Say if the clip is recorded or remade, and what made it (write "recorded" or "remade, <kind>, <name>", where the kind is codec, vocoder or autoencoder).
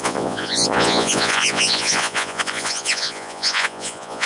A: remade, vocoder, Vocos